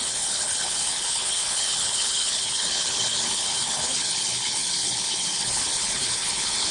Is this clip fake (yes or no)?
yes